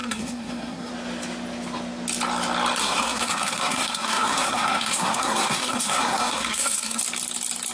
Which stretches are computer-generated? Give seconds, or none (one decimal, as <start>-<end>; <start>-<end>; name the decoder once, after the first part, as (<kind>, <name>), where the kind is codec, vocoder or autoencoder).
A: 0.0-0.9 (codec, SNAC); 2.8-7.0